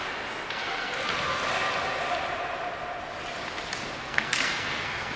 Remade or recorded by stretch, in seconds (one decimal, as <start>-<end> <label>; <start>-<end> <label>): 0.0-0.5 recorded; 0.5-0.9 remade; 0.9-4.0 recorded; 4.0-5.2 remade